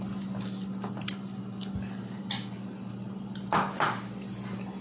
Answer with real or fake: real